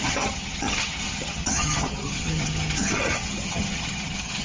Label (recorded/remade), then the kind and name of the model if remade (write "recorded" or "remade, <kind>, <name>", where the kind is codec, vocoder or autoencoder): remade, vocoder, HiFi-GAN